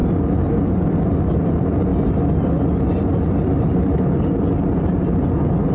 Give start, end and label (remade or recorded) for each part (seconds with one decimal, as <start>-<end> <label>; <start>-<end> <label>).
0.0-5.7 recorded